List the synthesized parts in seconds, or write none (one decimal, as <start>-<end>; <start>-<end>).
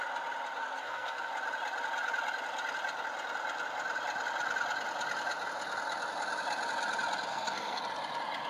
0.6-1.3; 7.3-7.8